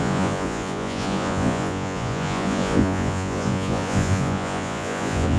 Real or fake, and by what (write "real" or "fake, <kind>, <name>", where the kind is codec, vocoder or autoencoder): fake, vocoder, Vocos